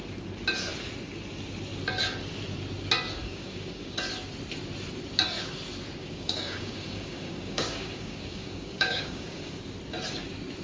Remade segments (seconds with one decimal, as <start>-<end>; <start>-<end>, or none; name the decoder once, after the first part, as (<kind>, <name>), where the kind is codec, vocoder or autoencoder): 3.2-4.0 (codec, DAC); 6.0-9.6